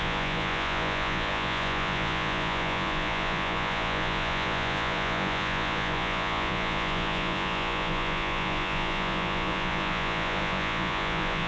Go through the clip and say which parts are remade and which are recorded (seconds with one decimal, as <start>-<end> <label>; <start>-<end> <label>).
0.0-11.5 remade